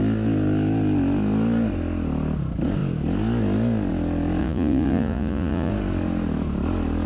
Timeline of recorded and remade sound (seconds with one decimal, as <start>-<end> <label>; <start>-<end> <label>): 0.0-4.4 recorded; 4.4-5.7 remade; 5.7-7.1 recorded